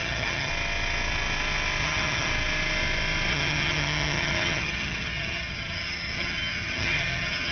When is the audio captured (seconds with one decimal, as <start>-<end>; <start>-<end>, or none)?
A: 0.5-1.8; 2.3-3.3